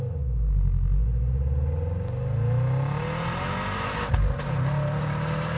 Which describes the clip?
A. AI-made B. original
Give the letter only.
B